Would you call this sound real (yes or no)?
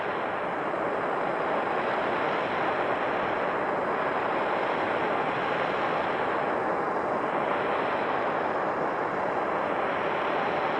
yes